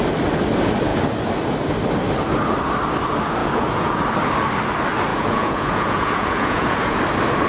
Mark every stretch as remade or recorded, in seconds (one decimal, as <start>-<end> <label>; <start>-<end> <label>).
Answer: 0.0-3.4 recorded; 3.4-4.0 remade; 4.0-5.1 recorded; 5.1-7.0 remade; 7.0-7.5 recorded